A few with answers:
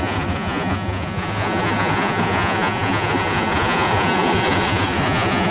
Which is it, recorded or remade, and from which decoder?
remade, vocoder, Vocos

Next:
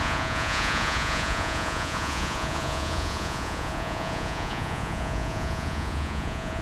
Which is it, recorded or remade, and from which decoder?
remade, vocoder, Vocos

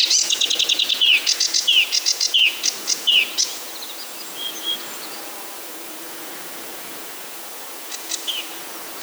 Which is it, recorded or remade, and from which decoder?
remade, vocoder, Vocos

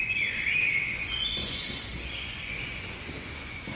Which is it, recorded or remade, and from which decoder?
remade, vocoder, Vocos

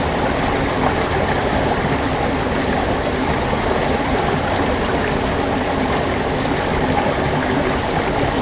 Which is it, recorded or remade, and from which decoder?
recorded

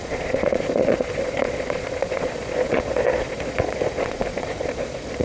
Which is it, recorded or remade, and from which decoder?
remade, vocoder, Vocos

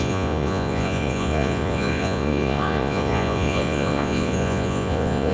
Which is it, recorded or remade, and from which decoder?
remade, vocoder, Vocos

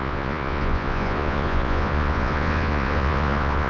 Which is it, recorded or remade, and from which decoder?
remade, vocoder, Vocos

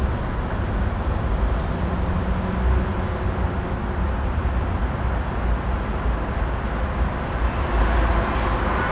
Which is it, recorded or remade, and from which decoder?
recorded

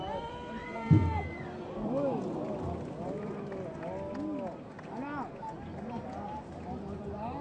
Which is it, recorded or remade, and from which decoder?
recorded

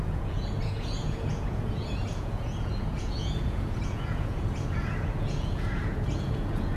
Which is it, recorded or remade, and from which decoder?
remade, vocoder, Vocos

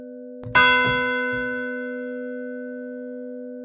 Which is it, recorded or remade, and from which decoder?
recorded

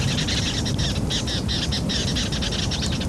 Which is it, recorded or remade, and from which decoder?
recorded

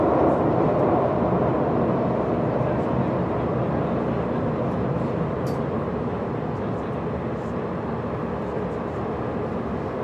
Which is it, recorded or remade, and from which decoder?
recorded